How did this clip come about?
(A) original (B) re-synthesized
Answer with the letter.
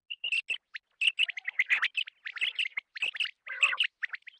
A